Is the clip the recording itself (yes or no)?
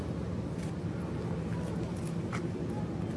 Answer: yes